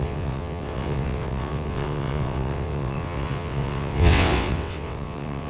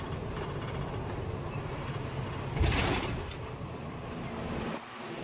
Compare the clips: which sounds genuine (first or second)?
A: second